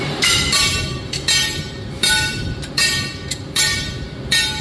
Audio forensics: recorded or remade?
remade